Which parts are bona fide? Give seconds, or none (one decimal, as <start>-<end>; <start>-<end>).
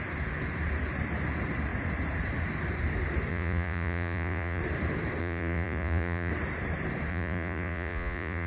0.0-3.3; 4.6-5.2; 6.3-7.1